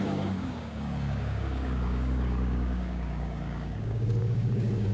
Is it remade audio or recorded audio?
remade